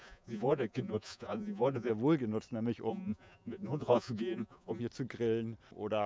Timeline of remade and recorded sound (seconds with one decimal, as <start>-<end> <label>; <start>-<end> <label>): 0.0-1.9 remade; 1.9-2.9 recorded; 2.9-4.8 remade; 4.8-6.1 recorded